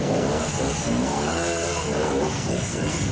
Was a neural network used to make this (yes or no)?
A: yes